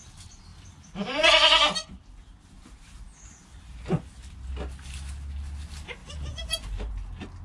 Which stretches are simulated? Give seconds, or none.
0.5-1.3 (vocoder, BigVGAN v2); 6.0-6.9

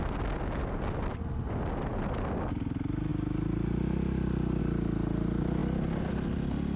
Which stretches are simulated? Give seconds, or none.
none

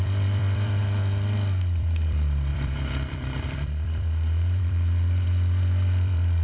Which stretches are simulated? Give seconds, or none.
0.0-0.8 (vocoder, BigVGAN v2); 1.8-6.4

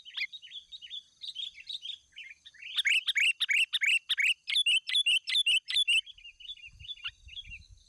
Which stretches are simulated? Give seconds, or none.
none